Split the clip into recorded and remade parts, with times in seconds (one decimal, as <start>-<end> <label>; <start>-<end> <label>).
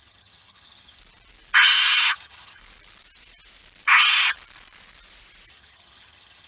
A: 0.0-1.0 remade; 1.0-1.8 recorded; 1.8-2.6 remade; 2.6-5.5 recorded; 5.5-6.5 remade